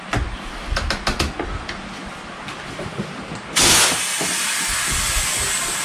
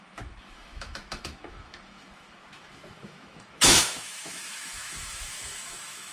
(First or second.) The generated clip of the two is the second